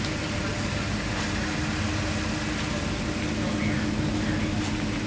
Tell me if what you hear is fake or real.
real